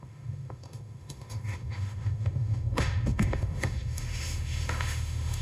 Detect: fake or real fake